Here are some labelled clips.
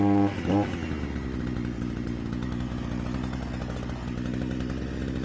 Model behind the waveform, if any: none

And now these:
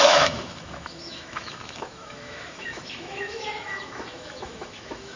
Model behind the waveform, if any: autoencoder, DAC-VAE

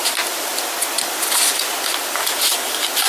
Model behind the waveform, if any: none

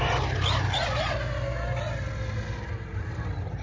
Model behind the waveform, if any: none